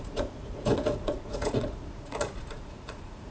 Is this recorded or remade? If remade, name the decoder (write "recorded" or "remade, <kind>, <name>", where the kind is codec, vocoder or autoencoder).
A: remade, vocoder, Vocos